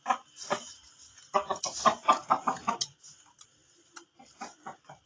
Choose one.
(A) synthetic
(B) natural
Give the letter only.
B